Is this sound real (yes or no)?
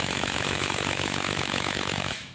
no